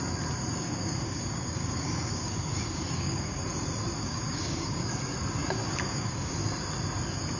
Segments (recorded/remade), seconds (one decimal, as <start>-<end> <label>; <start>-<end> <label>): 0.0-0.5 recorded; 0.5-3.4 remade; 3.4-4.0 recorded; 4.0-4.8 remade; 4.8-5.4 recorded; 5.4-6.3 remade; 6.3-7.4 recorded